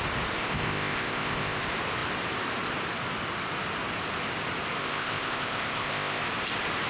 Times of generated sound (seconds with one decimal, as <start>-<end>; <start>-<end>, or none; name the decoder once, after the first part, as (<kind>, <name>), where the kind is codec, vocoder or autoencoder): 0.4-1.6 (codec, ZipCodec); 4.8-6.2